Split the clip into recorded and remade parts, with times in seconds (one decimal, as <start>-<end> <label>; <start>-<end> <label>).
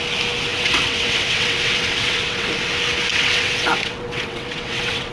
0.0-0.5 recorded; 0.5-2.5 remade; 2.5-3.1 recorded; 3.1-5.1 remade